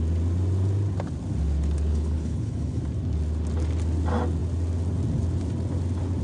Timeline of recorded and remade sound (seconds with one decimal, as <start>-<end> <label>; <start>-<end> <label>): 0.0-1.9 recorded; 1.9-2.8 remade; 2.8-6.2 recorded

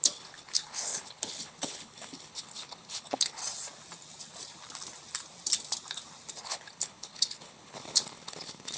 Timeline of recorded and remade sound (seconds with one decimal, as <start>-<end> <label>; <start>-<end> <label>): 0.0-3.4 remade; 3.4-6.4 recorded; 6.4-8.8 remade

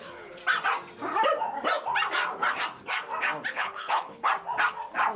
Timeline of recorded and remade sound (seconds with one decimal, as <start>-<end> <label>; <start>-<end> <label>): 0.0-0.4 remade; 0.4-3.5 recorded; 3.5-4.3 remade; 4.3-5.2 recorded

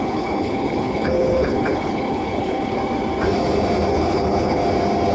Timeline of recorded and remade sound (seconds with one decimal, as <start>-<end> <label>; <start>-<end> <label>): 0.0-2.8 remade; 2.8-3.9 recorded; 3.9-4.6 remade; 4.6-5.1 recorded

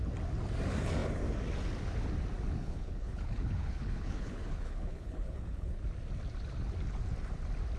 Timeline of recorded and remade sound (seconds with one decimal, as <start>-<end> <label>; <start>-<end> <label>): 0.0-2.6 recorded; 2.6-5.8 remade; 5.8-7.8 recorded

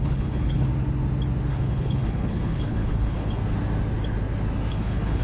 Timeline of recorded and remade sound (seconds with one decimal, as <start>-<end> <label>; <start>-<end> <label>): 0.0-0.7 remade; 0.7-1.5 recorded; 1.5-3.4 remade; 3.4-4.7 recorded; 4.7-5.2 remade